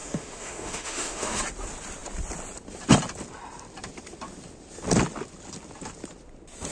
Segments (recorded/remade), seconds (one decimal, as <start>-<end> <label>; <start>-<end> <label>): 0.0-1.4 remade; 1.4-6.7 recorded